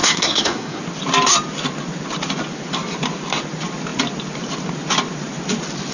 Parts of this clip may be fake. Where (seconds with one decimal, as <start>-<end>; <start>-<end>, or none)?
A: 0.0-0.8